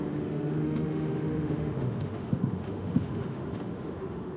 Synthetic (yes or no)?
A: yes